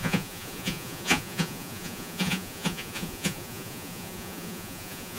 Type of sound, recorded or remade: remade